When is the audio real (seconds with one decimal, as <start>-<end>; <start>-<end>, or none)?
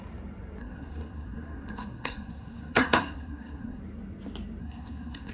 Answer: 0.0-0.6; 3.8-4.6